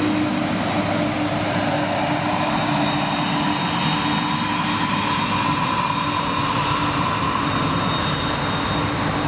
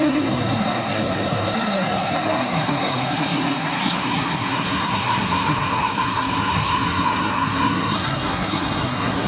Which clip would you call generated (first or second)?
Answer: second